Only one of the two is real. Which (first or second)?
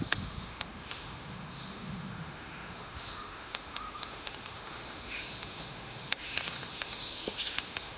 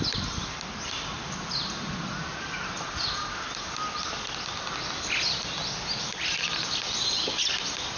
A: second